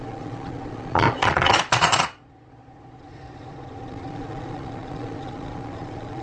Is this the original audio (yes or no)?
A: no